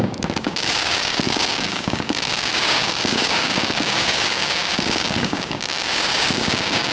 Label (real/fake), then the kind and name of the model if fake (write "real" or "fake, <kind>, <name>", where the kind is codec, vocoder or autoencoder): fake, codec, DAC